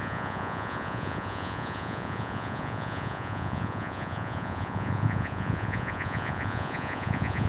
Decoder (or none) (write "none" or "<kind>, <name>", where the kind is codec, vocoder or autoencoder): vocoder, Vocos